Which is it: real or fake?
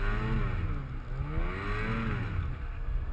real